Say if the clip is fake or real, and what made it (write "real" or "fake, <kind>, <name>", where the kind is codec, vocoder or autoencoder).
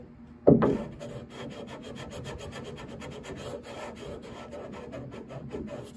real